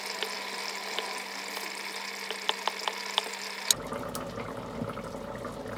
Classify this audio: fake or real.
real